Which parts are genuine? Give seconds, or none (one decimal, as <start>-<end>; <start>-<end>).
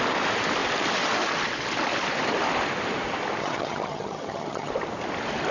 0.0-3.4; 4.7-5.5